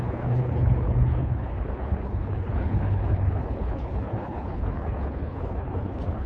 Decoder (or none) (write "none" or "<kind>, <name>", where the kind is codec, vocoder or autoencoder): codec, HILCodec